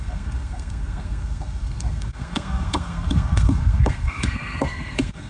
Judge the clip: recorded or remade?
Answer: remade